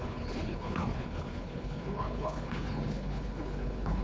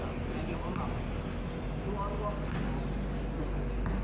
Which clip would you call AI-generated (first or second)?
first